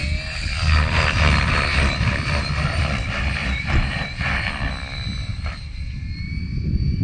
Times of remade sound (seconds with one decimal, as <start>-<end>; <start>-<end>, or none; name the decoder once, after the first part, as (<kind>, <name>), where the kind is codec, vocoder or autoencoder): 3.4-4.5 (vocoder, BigVGAN v2)